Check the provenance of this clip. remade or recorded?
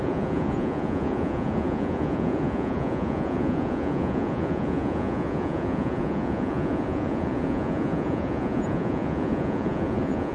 remade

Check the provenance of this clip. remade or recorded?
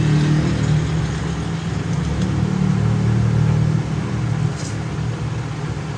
recorded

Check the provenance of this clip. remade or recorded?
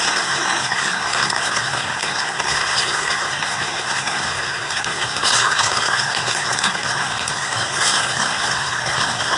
remade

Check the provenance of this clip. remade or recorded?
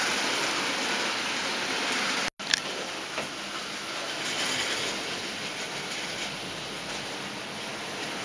recorded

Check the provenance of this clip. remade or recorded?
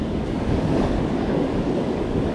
remade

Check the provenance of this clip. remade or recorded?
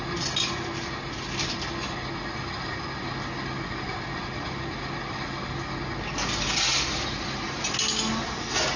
recorded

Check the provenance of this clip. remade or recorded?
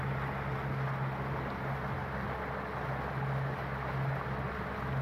recorded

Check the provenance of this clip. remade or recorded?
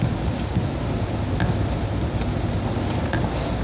recorded